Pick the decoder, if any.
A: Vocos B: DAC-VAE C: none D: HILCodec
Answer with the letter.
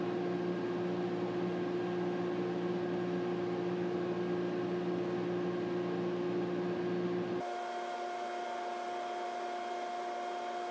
C